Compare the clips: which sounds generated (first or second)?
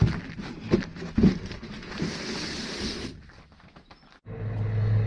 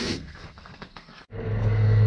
second